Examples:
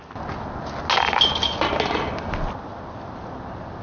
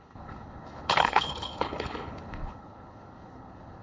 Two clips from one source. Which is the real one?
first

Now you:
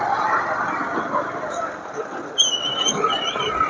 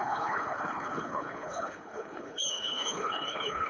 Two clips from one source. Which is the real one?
first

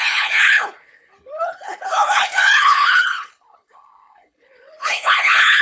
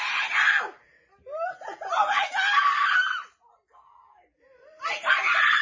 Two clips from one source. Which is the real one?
second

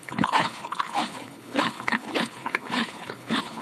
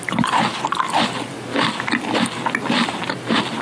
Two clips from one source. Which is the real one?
second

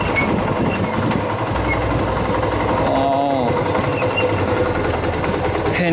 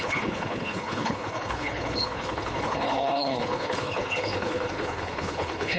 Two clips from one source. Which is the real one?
first